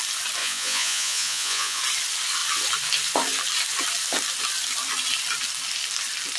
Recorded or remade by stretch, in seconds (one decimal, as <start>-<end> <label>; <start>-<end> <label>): 0.0-0.4 recorded; 0.4-1.8 remade; 1.8-6.4 recorded